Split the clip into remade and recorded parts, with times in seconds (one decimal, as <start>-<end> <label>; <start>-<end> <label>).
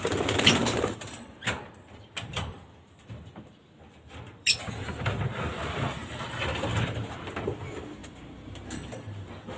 0.0-2.5 recorded; 2.5-5.2 remade; 5.2-6.7 recorded; 6.7-7.3 remade; 7.3-9.6 recorded